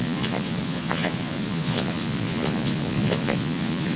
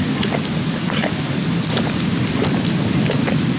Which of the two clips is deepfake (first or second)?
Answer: first